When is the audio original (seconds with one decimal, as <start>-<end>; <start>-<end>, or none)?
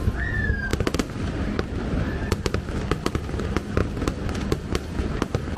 0.0-5.6